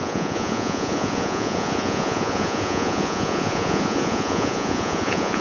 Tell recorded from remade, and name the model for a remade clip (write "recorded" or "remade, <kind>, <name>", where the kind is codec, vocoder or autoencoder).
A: remade, vocoder, Vocos